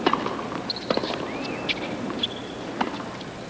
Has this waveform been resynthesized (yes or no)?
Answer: no